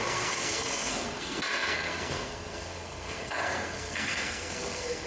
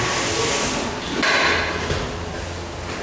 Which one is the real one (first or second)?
second